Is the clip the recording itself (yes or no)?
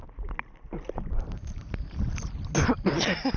yes